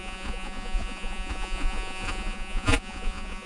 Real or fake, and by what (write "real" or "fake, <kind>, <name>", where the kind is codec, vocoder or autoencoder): fake, vocoder, Vocos